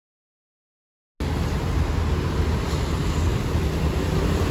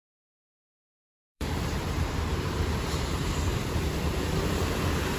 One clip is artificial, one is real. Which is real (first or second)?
first